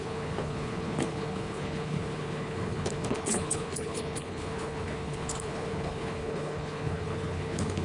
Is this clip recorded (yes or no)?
no